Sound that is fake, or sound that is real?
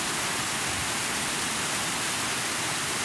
real